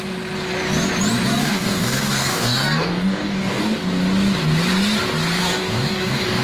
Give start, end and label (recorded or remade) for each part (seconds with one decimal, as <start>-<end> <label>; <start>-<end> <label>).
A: 0.0-1.4 recorded; 1.4-3.6 remade; 3.6-5.4 recorded; 5.4-6.4 remade